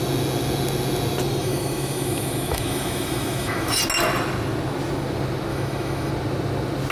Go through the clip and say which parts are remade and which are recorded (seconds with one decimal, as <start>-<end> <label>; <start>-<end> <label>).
0.0-1.4 recorded; 1.4-3.8 remade; 3.8-5.5 recorded; 5.5-6.1 remade; 6.1-6.9 recorded